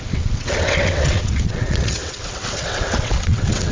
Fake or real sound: fake